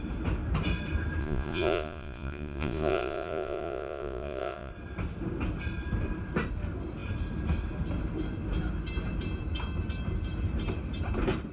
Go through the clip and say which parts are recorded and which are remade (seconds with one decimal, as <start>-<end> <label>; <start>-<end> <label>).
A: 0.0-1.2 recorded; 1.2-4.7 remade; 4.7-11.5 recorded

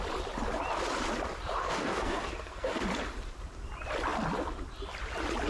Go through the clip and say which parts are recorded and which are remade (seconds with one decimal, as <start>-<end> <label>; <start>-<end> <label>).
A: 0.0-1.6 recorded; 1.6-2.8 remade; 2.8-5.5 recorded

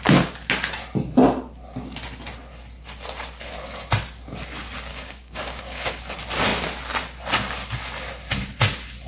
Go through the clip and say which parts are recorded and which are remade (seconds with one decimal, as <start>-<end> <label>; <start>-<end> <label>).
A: 0.0-4.9 recorded; 4.9-6.0 remade; 6.0-9.1 recorded